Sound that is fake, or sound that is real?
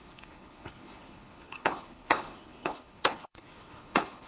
fake